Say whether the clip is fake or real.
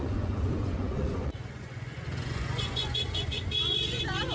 fake